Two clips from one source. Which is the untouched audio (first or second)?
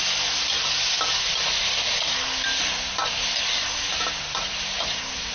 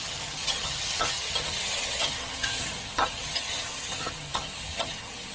first